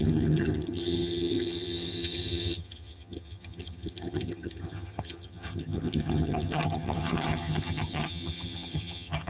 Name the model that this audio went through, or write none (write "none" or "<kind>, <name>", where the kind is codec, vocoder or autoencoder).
vocoder, HiFi-GAN